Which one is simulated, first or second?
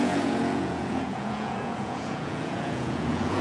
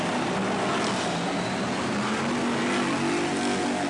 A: first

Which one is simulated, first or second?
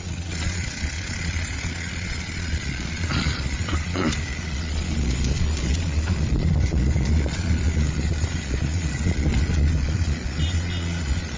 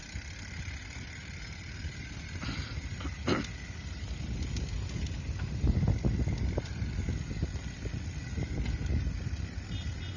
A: first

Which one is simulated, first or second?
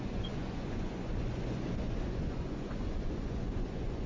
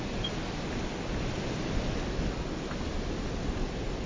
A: first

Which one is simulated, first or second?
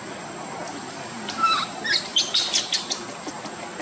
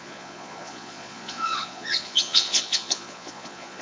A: second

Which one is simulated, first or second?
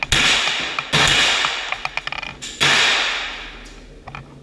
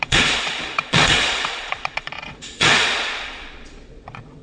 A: second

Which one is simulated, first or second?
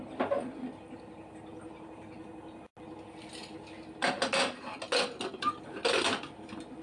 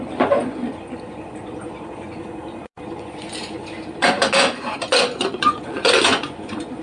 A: second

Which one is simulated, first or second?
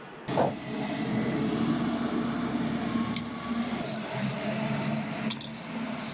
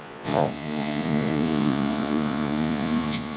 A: second